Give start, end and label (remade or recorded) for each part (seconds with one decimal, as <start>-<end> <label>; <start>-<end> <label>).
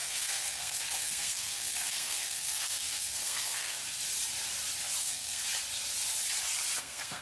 0.0-3.8 remade; 3.8-5.0 recorded; 5.0-5.4 remade; 5.4-6.8 recorded; 6.8-7.2 remade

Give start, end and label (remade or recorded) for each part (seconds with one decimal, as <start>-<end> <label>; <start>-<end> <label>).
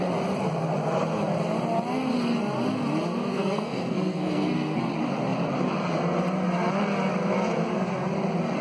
0.0-3.3 recorded; 3.3-4.8 remade; 4.8-8.6 recorded